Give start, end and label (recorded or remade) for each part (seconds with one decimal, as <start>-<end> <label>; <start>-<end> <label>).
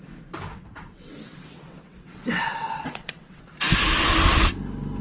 0.0-0.5 recorded; 0.5-3.4 remade; 3.4-5.0 recorded